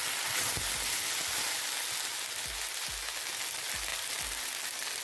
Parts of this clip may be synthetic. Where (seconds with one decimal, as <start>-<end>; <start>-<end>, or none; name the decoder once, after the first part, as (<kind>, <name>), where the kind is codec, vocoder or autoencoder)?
none